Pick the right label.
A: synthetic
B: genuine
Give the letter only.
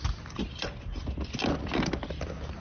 B